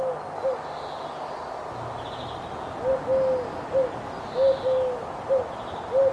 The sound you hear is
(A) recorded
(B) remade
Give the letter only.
A